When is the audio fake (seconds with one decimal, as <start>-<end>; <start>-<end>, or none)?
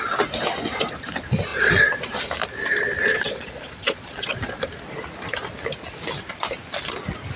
1.5-2.2; 3.1-4.6